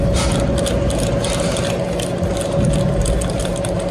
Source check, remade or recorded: recorded